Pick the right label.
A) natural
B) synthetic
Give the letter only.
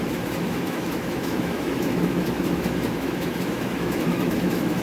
B